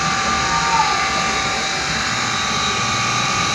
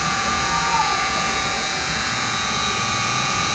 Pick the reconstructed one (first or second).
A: second